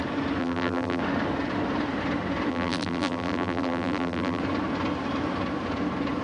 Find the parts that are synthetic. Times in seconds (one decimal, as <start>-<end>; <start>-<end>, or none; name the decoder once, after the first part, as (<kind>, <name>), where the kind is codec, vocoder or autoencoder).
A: 0.4-1.0 (vocoder, BigVGAN v2); 2.5-4.4